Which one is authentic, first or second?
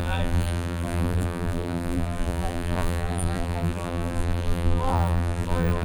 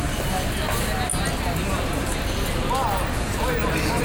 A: second